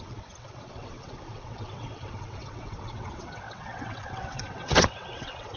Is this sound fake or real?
fake